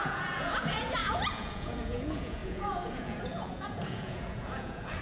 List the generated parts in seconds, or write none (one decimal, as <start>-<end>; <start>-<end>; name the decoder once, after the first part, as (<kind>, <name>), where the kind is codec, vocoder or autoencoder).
0.0-5.0 (vocoder, Vocos)